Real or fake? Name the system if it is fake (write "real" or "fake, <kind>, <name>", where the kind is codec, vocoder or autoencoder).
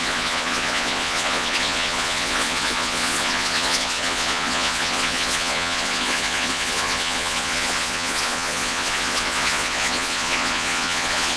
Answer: fake, vocoder, Vocos